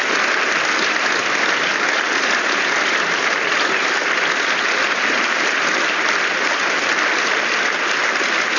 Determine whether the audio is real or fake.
real